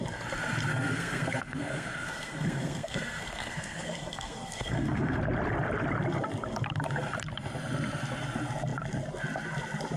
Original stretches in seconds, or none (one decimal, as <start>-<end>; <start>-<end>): 0.0-0.7; 5.2-10.0